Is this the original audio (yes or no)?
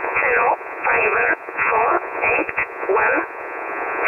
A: no